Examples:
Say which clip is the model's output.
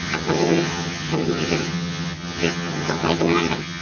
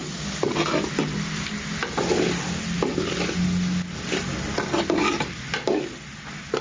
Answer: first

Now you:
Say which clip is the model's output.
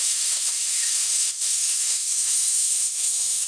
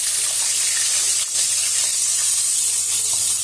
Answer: first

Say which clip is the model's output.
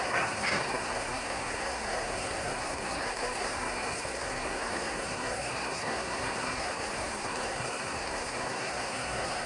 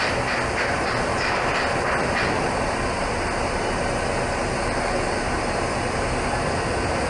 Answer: first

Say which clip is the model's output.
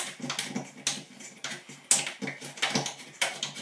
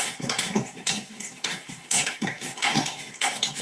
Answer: second